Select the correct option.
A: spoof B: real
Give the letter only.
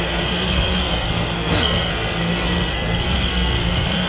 A